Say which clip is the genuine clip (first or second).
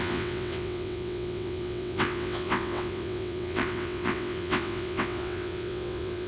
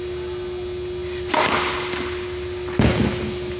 second